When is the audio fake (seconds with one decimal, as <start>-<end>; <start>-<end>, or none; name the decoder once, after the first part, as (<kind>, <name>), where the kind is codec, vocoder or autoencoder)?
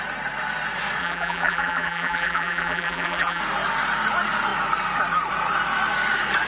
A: 1.0-3.4 (vocoder, BigVGAN v2)